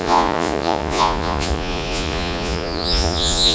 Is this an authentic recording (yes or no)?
no